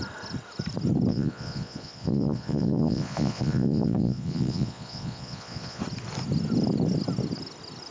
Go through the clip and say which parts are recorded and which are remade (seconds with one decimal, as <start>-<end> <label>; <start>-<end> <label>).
0.0-1.1 recorded; 1.1-5.8 remade; 5.8-7.9 recorded